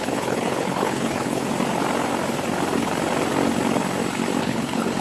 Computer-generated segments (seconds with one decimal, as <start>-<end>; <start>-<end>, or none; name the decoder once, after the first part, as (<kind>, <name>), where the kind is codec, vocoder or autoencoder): 0.0-1.4 (codec, HILCodec); 4.4-5.0